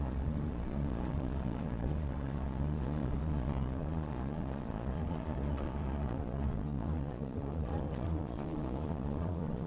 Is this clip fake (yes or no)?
yes